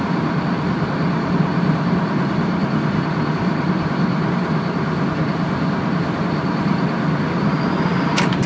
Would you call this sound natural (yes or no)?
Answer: yes